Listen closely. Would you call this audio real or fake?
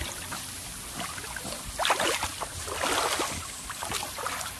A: real